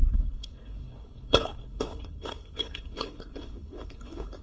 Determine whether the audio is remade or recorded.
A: remade